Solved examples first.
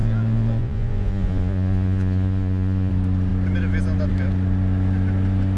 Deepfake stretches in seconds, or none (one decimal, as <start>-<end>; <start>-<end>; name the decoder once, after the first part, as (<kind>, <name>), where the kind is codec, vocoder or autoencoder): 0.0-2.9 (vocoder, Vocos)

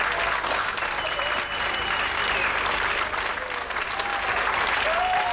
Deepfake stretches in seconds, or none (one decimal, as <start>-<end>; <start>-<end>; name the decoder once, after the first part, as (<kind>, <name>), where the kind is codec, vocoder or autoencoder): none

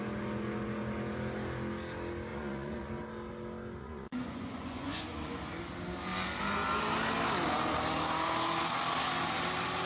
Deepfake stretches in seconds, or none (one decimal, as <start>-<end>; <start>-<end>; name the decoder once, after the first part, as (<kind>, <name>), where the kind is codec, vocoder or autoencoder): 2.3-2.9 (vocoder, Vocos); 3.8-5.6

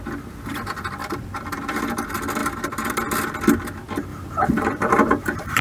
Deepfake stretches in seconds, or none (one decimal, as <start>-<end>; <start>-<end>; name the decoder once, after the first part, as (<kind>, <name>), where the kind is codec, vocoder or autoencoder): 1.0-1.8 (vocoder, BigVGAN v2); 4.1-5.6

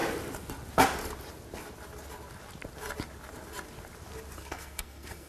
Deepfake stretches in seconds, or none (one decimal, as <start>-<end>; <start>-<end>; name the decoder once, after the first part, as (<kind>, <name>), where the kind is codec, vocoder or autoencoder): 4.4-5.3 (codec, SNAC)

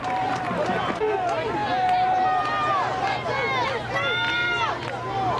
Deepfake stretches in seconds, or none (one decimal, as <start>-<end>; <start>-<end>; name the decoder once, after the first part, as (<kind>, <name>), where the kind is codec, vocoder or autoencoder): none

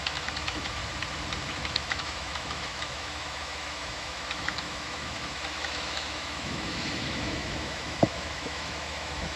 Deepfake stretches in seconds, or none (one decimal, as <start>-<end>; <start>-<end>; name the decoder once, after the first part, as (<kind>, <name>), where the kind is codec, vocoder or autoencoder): 0.0-0.8 (autoencoder, DAC-VAE); 1.5-9.4

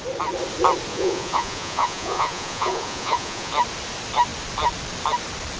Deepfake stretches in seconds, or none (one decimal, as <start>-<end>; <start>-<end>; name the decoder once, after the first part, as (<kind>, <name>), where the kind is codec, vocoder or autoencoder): 0.9-3.5 (vocoder, Vocos)